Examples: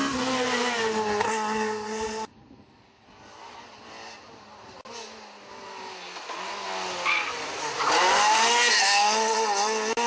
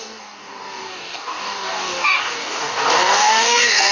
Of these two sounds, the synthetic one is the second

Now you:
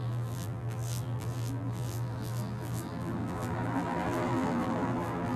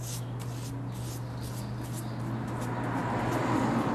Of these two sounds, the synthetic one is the first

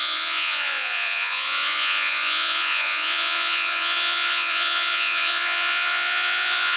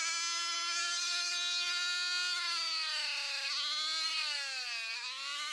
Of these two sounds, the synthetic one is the first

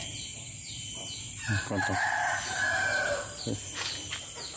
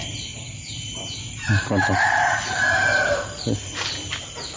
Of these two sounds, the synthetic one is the second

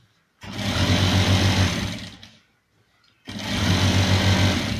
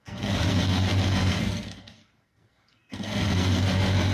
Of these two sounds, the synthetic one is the second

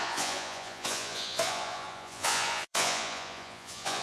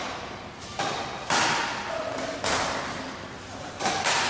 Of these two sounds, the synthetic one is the first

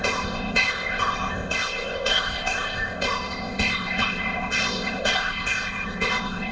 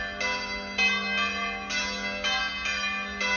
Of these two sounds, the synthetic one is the first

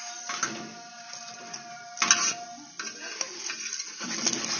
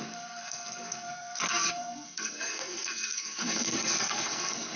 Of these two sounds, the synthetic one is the second